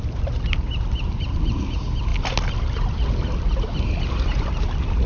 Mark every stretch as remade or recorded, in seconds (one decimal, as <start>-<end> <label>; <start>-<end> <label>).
0.0-5.1 recorded